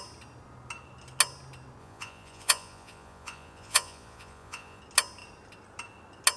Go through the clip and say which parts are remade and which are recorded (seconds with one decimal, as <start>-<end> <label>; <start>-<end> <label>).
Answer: 0.0-1.8 recorded; 1.8-4.8 remade; 4.8-6.4 recorded